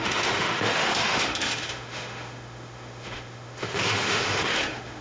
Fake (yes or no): yes